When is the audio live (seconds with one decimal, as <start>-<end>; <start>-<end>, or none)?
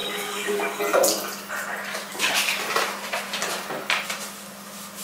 0.8-2.1; 2.7-5.0